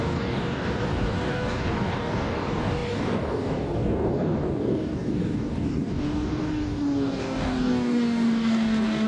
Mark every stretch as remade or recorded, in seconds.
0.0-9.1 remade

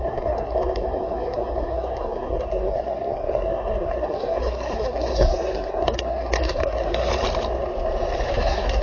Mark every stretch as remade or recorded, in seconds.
0.0-7.1 remade; 7.1-8.3 recorded; 8.3-8.8 remade